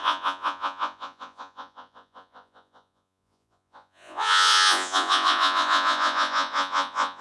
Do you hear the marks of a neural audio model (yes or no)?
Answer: yes